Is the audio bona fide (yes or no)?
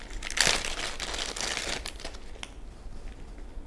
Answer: yes